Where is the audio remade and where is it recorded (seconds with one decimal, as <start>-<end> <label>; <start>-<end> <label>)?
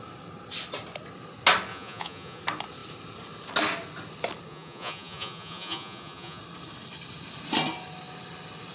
0.0-1.7 recorded; 1.7-2.4 remade; 2.4-4.5 recorded; 4.5-6.4 remade; 6.4-8.7 recorded